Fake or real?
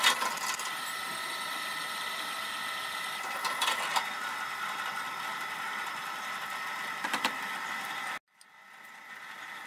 real